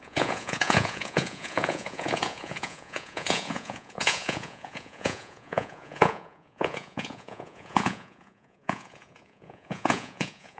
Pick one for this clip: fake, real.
fake